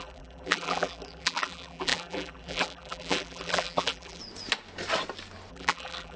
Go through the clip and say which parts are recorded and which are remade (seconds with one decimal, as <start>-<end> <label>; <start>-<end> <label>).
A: 0.0-4.2 remade; 4.2-5.5 recorded; 5.5-6.2 remade